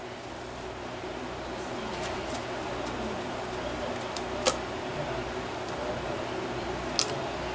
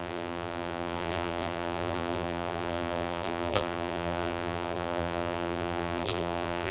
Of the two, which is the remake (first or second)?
second